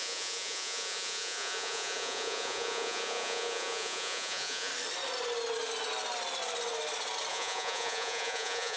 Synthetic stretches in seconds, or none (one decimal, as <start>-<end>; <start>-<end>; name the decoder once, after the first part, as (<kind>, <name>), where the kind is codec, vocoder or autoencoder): 0.0-4.7 (vocoder, Vocos); 7.3-8.8